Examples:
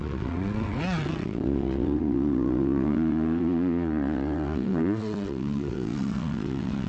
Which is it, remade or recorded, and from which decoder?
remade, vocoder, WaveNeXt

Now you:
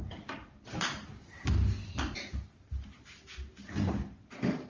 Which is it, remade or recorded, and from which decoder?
recorded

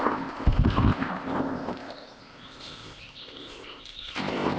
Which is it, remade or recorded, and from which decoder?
remade, codec, ZipCodec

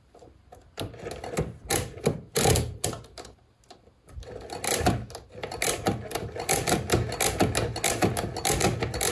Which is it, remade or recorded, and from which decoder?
recorded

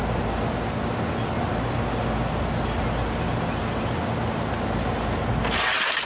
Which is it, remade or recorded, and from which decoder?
recorded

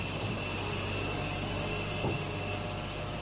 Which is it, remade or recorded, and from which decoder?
recorded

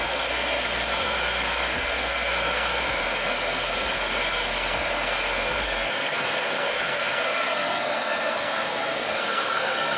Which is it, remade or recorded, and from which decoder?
remade, codec, SNAC